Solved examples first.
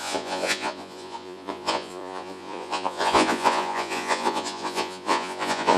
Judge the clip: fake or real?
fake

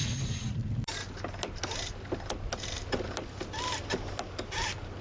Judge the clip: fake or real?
real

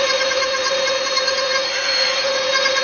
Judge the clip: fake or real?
fake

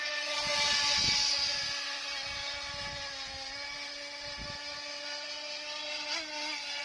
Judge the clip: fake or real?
real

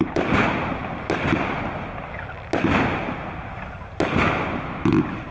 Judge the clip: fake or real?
real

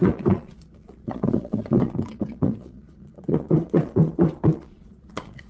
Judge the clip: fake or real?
fake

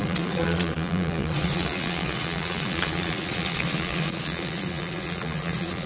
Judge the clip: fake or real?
fake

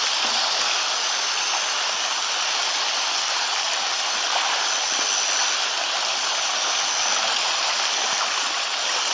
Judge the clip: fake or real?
real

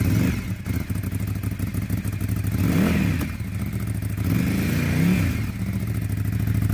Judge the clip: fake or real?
real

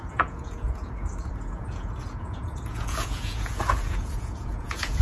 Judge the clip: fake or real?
fake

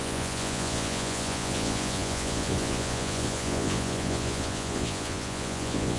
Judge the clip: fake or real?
fake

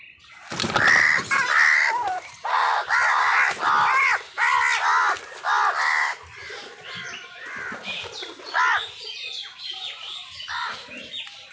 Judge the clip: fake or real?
real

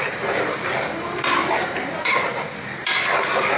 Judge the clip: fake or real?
real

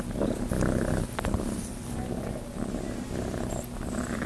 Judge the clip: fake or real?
real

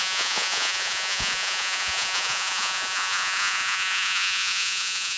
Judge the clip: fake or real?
fake